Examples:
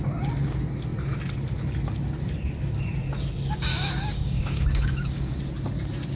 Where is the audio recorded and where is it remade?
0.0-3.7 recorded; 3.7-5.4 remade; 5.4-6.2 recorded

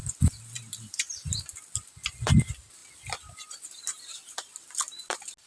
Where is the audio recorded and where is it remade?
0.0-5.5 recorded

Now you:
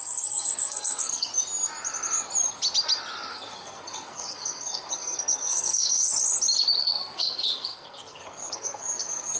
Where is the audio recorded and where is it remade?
0.0-1.3 remade; 1.3-3.3 recorded; 3.3-6.1 remade; 6.1-6.8 recorded; 6.8-9.4 remade

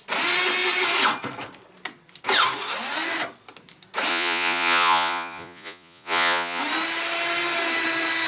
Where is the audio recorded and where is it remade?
0.0-4.1 recorded; 4.1-6.6 remade; 6.6-8.3 recorded

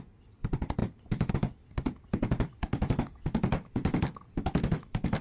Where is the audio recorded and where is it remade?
0.0-5.2 recorded

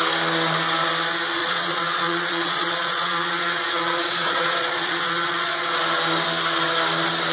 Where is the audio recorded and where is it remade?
0.0-1.4 recorded; 1.4-5.8 remade; 5.8-7.3 recorded

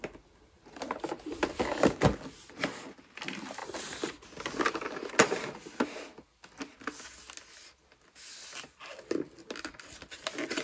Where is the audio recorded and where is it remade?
0.0-10.6 recorded